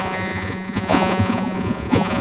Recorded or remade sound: remade